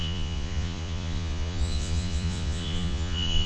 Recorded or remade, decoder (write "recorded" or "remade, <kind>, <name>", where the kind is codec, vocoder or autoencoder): remade, vocoder, Vocos